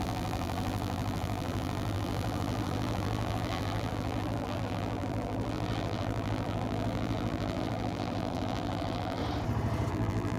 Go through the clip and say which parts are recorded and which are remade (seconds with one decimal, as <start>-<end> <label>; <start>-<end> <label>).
0.0-9.2 remade; 9.2-9.9 recorded; 9.9-10.4 remade